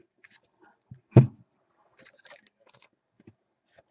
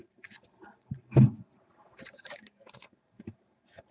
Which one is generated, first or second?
second